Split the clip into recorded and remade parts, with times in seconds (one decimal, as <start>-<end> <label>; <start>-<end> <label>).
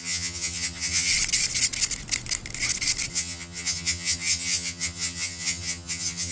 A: 0.0-1.1 remade; 1.1-3.1 recorded; 3.1-6.3 remade